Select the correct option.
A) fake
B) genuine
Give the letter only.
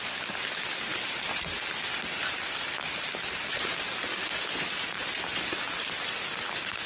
B